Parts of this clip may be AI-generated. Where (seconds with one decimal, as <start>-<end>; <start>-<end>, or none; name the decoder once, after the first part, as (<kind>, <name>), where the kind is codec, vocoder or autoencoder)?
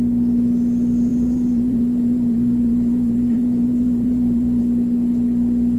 1.1-4.6 (vocoder, BigVGAN v2)